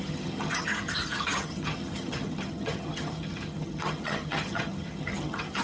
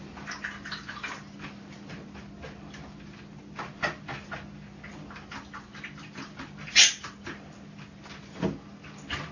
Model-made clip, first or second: first